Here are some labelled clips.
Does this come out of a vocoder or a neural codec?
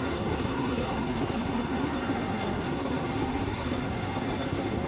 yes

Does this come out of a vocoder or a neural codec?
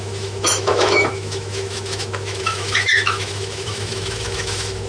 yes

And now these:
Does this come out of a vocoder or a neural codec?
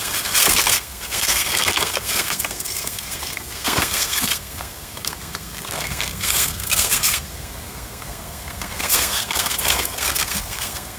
yes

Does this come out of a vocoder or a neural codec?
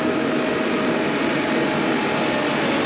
no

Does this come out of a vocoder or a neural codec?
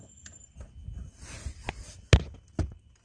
no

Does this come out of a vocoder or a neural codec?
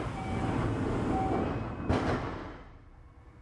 no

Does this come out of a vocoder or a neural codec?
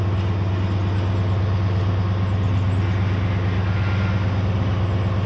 no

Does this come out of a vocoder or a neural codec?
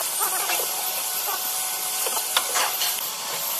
yes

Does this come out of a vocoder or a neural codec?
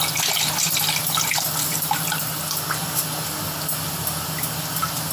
no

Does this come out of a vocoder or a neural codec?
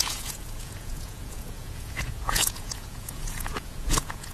yes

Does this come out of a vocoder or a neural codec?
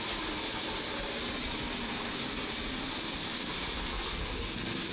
no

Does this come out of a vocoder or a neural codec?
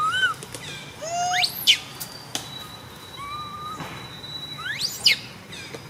no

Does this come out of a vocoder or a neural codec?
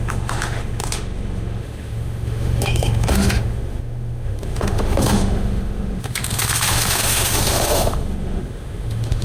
yes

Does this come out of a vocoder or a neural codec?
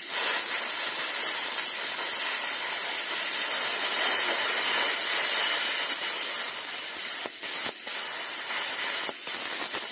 no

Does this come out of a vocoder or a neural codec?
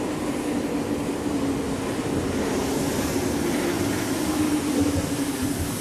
no